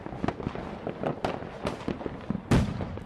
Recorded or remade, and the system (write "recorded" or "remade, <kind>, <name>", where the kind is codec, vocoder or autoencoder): recorded